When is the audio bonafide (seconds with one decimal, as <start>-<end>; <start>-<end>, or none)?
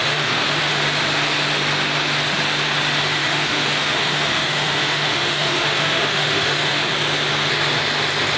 0.7-3.2; 6.9-8.4